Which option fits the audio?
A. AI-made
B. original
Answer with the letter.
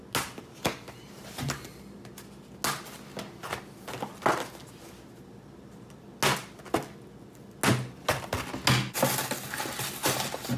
B